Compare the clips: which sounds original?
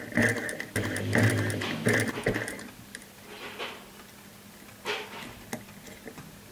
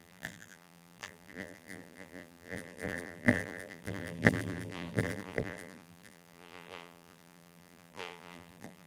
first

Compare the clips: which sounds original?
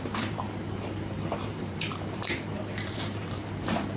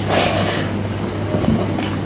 second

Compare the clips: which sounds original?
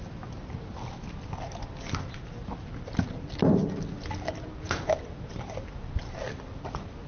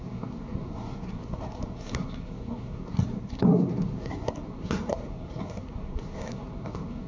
first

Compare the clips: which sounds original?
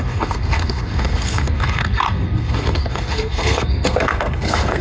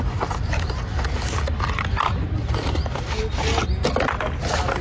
second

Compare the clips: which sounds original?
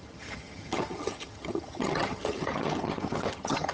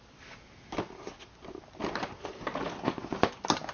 second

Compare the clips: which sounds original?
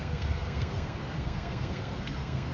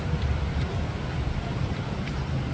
second